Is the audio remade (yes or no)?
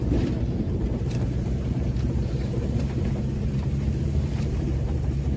yes